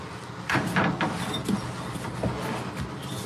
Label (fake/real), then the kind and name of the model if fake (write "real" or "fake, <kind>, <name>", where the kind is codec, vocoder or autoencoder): real